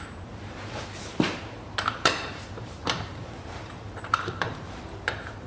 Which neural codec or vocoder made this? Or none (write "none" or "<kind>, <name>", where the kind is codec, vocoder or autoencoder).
vocoder, BigVGAN v2